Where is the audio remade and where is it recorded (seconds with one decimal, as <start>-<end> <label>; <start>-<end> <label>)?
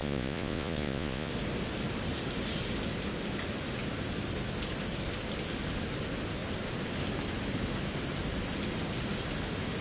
0.0-1.3 remade; 1.3-9.8 recorded